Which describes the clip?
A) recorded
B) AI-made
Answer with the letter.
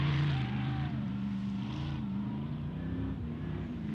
B